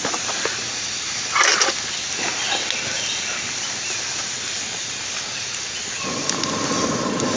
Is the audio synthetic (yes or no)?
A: no